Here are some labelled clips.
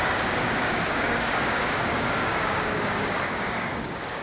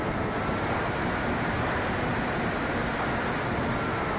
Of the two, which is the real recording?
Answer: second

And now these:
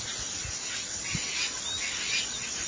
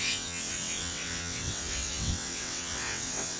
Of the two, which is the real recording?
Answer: first